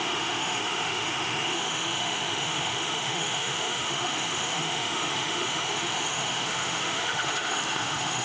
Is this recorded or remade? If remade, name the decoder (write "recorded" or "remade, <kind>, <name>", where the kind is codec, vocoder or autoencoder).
remade, autoencoder, DAC-VAE